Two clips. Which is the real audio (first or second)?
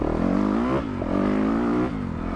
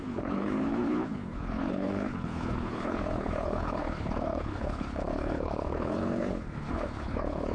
first